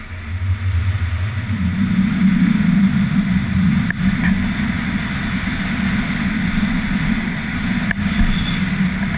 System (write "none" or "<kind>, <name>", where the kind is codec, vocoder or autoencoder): none